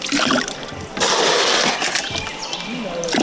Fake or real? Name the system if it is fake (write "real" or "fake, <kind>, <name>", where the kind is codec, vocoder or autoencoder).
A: real